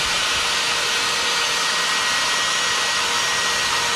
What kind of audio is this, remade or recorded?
recorded